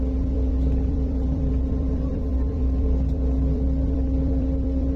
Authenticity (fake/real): fake